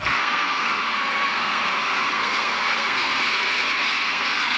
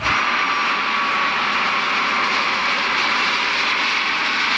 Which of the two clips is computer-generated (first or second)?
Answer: first